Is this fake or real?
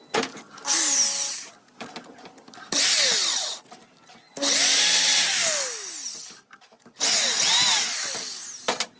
real